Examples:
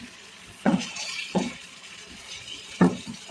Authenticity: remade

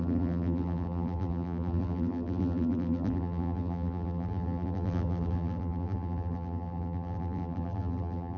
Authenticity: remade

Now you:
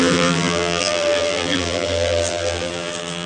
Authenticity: remade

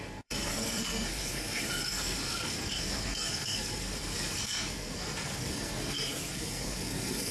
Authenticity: remade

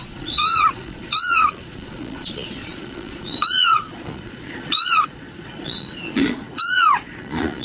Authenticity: remade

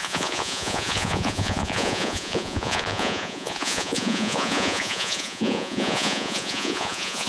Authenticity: remade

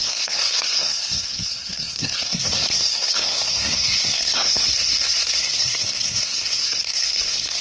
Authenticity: remade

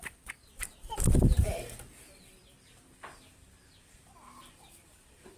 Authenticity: remade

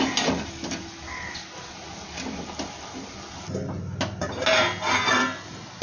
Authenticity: recorded